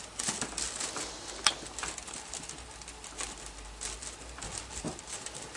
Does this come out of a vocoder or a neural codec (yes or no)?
no